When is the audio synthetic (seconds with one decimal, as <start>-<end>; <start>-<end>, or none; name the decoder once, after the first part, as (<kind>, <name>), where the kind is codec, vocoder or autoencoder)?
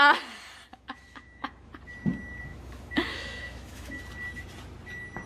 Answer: 0.7-1.7 (autoencoder, DAC-VAE); 2.5-4.0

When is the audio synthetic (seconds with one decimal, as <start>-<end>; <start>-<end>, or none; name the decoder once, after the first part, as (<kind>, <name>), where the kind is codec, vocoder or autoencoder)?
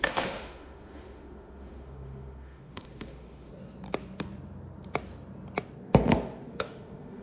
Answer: 0.0-3.5 (autoencoder, DAC-VAE); 6.5-7.2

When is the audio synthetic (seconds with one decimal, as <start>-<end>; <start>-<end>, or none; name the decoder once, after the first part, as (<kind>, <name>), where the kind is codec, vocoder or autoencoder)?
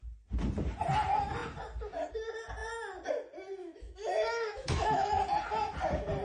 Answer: 3.6-5.2 (autoencoder, DAC-VAE)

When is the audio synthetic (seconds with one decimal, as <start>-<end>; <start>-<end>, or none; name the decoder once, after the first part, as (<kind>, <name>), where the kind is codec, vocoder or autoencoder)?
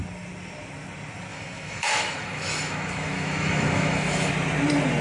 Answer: 1.3-4.3 (autoencoder, DAC-VAE)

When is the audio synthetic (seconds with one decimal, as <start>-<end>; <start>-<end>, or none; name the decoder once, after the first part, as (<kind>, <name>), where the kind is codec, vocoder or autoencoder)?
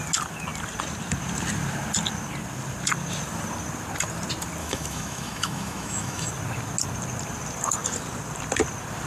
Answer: 4.6-6.3 (autoencoder, DAC-VAE)